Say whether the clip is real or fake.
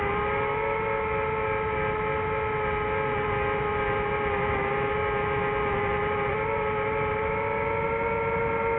real